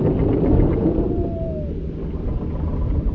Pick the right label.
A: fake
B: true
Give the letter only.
B